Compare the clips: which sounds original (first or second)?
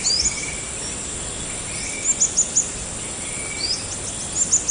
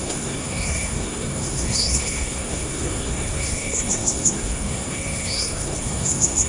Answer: first